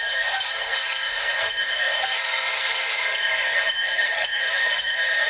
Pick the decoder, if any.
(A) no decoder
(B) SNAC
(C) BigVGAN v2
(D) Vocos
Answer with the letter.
B